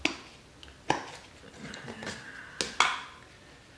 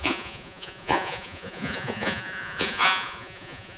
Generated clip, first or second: second